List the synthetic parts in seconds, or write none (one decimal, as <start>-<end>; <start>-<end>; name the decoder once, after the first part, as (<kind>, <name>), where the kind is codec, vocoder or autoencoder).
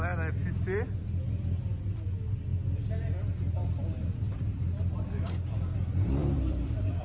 6.2-7.0 (vocoder, BigVGAN v2)